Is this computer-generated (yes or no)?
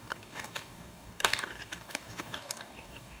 yes